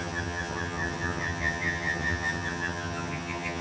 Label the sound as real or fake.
fake